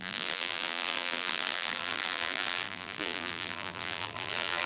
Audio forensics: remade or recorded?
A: remade